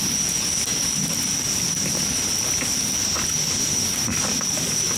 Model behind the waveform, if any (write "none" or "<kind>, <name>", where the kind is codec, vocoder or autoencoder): none